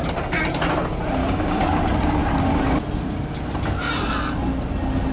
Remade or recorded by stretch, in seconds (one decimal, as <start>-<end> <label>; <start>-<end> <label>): 0.0-1.2 recorded; 1.2-1.8 remade; 1.8-5.1 recorded